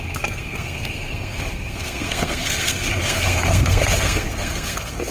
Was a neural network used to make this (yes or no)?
yes